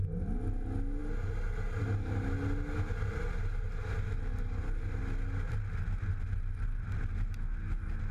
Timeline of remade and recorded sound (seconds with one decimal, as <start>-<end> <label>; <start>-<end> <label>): 0.0-8.1 recorded